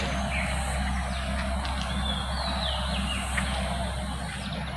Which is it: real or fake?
real